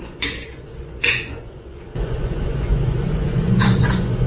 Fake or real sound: fake